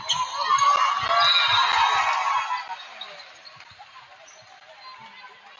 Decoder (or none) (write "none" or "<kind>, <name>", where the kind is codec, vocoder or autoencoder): none